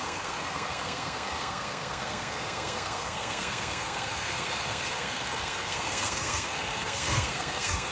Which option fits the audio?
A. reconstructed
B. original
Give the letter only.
A